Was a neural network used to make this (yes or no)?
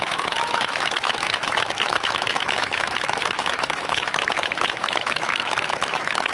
yes